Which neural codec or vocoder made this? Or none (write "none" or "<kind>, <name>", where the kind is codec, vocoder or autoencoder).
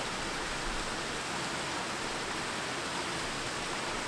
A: none